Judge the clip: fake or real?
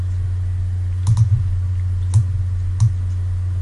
real